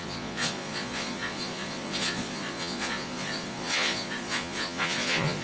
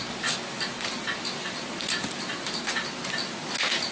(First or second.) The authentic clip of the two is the second